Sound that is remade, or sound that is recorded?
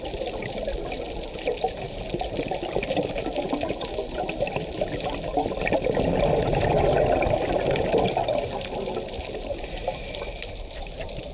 recorded